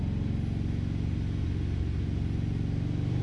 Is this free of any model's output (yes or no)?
yes